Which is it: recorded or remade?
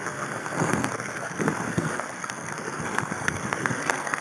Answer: remade